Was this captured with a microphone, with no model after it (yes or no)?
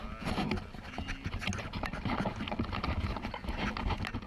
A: yes